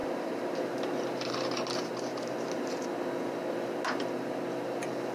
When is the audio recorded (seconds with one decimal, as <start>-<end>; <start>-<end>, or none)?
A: 1.3-2.1; 2.8-5.1

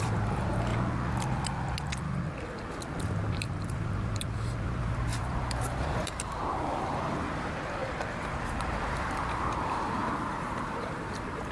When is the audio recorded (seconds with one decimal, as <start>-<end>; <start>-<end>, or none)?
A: 0.7-3.0

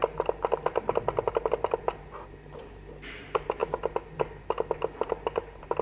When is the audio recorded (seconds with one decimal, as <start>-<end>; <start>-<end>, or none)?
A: 0.0-5.8

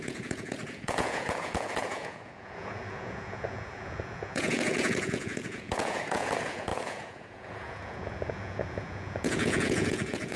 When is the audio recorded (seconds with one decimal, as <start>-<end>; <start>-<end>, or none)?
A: none

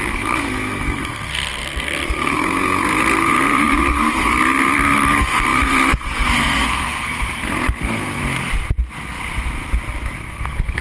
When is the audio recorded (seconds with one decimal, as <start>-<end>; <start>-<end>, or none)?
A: 8.2-10.3

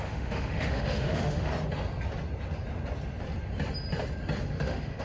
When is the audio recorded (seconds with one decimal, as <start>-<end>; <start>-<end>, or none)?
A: 1.5-4.5

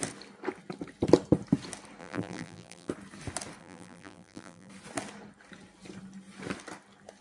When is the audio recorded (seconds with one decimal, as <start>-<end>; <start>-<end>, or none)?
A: 0.0-2.0; 2.9-3.6; 4.7-7.2